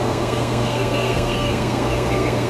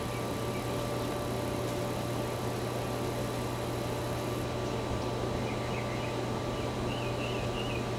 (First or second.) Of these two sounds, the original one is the second